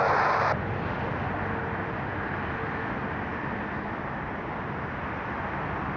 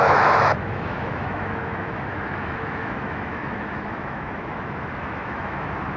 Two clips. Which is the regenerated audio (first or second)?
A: second